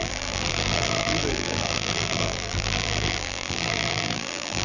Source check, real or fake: fake